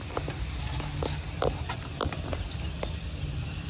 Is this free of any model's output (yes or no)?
yes